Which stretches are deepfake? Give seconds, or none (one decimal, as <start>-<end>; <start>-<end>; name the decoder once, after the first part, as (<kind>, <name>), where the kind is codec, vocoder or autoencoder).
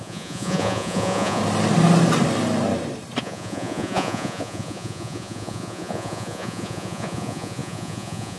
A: 0.0-1.4 (vocoder, Vocos); 3.2-8.4